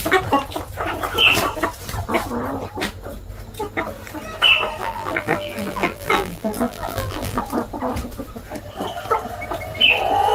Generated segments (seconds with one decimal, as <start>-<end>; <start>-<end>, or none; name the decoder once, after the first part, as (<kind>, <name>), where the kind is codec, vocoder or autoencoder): 4.8-7.4 (vocoder, BigVGAN v2)